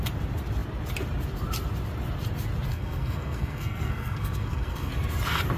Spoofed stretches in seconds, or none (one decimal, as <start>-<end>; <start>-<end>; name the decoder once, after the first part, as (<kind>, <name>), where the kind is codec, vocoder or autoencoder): 2.7-4.9 (codec, SNAC)